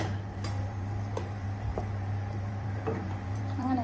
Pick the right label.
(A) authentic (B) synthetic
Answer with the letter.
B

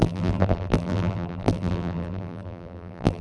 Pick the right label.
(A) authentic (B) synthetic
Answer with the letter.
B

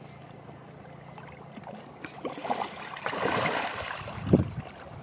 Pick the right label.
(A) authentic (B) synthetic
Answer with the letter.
B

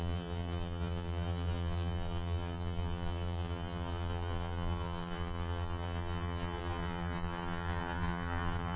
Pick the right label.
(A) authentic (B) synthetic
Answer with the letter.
B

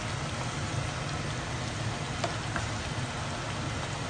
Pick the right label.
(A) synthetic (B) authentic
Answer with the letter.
B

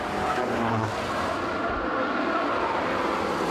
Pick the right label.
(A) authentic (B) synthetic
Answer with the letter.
A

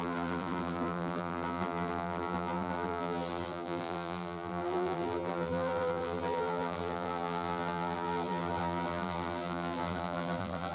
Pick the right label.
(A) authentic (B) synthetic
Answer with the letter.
B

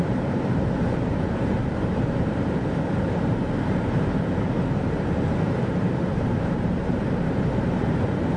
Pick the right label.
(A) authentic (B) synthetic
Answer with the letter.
B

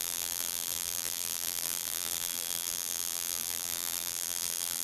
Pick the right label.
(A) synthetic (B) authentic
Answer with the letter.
A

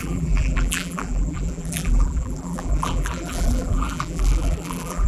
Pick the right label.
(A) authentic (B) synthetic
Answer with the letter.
B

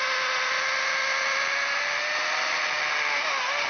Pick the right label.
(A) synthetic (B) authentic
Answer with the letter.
B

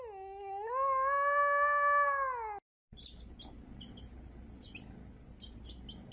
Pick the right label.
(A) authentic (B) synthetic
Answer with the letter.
A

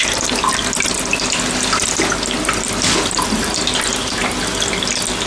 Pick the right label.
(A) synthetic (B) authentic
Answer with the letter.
B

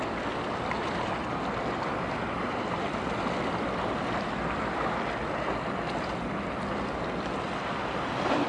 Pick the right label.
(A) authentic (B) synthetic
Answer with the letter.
A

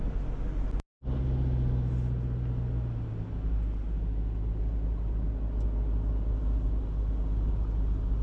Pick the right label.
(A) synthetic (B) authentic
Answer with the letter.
B